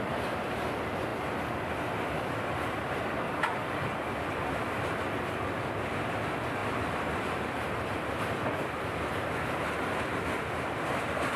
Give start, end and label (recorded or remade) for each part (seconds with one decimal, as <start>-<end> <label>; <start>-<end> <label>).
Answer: 0.0-3.6 recorded; 3.6-5.0 remade; 5.0-6.6 recorded; 6.6-8.2 remade; 8.2-11.4 recorded

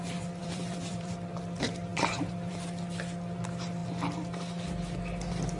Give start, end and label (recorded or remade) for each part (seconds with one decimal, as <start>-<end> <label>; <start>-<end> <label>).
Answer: 0.0-0.4 recorded; 0.4-1.1 remade; 1.1-1.9 recorded; 1.9-2.5 remade; 2.5-5.6 recorded

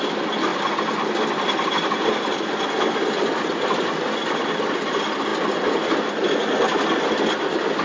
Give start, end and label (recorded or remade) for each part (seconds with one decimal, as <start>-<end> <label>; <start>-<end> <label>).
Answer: 0.0-7.8 recorded